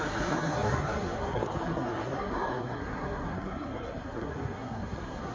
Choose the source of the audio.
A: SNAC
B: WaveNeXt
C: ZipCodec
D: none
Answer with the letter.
A